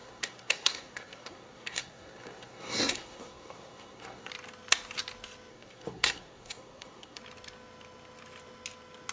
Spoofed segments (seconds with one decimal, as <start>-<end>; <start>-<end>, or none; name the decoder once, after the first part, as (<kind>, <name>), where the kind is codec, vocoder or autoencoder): 0.0-4.3 (codec, SNAC); 5.5-7.2